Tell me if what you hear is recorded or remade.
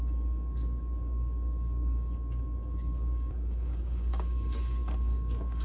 remade